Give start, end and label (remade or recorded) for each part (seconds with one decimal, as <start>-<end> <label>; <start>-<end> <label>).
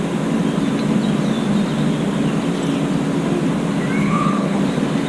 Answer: 0.0-4.0 recorded; 4.0-4.6 remade; 4.6-5.1 recorded